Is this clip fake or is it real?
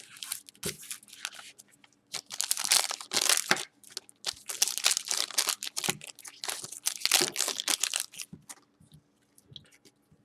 real